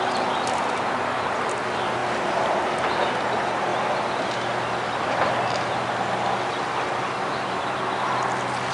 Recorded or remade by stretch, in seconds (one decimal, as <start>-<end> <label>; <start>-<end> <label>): 0.0-8.7 recorded